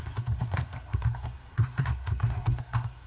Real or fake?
fake